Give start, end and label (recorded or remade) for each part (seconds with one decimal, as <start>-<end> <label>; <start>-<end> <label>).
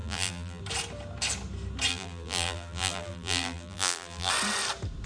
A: 0.0-0.6 remade; 0.6-1.9 recorded; 1.9-4.3 remade; 4.3-5.1 recorded